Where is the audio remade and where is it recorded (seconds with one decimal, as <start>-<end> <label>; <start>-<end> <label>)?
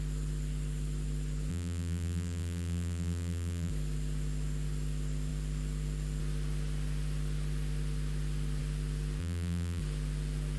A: 0.0-1.5 recorded; 1.5-3.7 remade; 3.7-9.2 recorded; 9.2-9.8 remade; 9.8-10.6 recorded